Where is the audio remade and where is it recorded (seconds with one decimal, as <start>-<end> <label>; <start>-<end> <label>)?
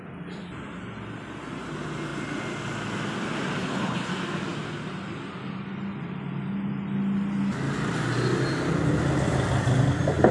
0.0-3.6 recorded; 3.6-4.1 remade; 4.1-10.3 recorded